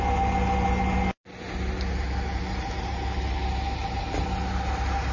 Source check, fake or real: real